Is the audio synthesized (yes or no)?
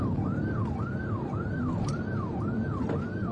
yes